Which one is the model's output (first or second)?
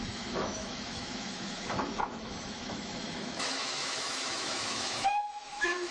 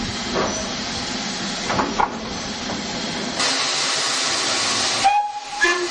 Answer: first